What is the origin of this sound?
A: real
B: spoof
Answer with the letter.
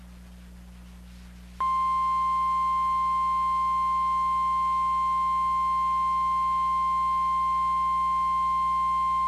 A